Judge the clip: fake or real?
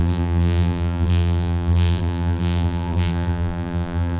fake